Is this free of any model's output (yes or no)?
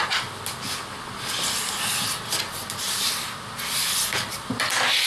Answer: yes